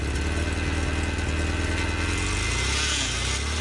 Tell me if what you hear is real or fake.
real